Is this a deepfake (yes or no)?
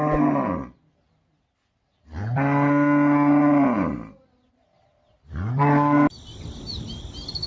no